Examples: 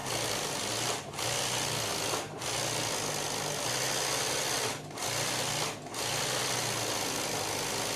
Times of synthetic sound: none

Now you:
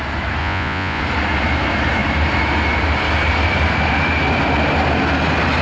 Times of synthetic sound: 0.4-1.0 (vocoder, Vocos)